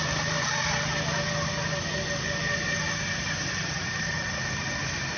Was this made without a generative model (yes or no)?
yes